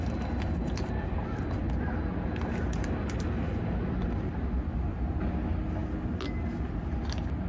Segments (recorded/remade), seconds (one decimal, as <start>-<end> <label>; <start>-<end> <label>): 0.0-7.5 recorded